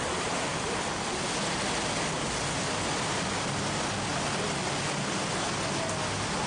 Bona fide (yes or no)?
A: yes